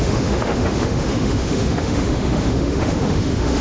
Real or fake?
fake